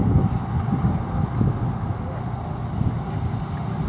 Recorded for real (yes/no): yes